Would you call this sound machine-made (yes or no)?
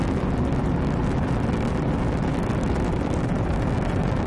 no